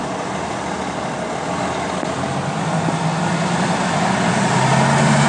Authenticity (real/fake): real